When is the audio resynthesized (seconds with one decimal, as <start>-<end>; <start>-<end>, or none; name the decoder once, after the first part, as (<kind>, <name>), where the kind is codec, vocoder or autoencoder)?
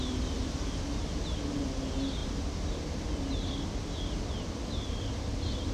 none